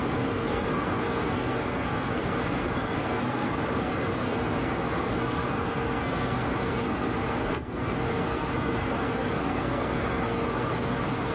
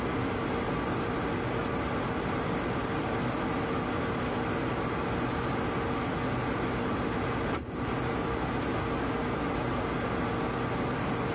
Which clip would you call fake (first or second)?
first